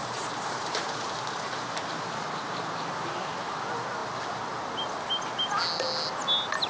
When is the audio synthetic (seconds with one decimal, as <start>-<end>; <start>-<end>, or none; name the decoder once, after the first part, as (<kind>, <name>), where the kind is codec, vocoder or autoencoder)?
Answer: 0.0-3.4 (vocoder, BigVGAN v2)